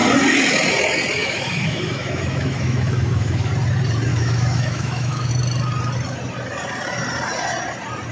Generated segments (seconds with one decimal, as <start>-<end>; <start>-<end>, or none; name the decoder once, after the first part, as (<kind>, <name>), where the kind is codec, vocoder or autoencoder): 1.2-3.5 (autoencoder, DAC-VAE); 4.1-5.3